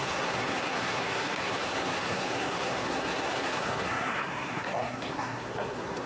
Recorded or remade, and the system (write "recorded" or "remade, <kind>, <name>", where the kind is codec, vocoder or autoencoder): remade, codec, SNAC